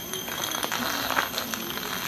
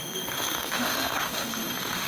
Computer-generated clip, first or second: second